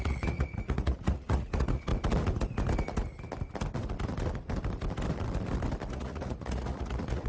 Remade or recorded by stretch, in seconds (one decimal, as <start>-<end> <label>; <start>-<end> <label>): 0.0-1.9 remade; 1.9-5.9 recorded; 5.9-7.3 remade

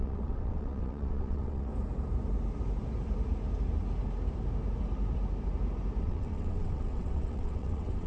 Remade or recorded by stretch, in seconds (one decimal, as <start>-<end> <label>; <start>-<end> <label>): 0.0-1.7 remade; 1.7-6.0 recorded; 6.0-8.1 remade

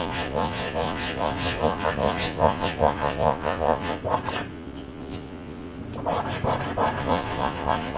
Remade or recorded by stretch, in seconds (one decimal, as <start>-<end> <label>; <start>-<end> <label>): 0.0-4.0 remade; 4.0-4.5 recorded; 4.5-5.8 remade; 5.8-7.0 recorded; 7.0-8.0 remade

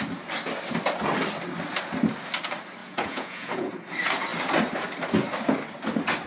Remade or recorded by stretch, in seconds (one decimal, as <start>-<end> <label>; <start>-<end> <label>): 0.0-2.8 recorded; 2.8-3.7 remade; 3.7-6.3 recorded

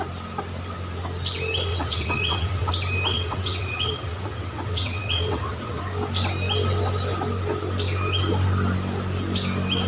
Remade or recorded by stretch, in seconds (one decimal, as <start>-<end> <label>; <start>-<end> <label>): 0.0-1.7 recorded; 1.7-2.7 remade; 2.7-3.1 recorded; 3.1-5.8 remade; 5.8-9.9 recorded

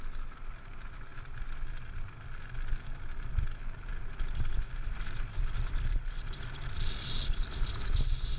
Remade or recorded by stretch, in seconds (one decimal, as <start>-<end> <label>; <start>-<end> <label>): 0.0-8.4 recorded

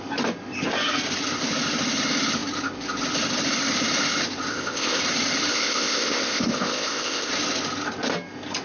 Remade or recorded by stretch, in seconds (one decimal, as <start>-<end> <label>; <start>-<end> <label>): 0.0-4.5 recorded; 4.5-5.0 remade; 5.0-5.5 recorded; 5.5-7.3 remade; 7.3-8.6 recorded